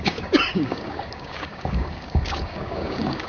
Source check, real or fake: fake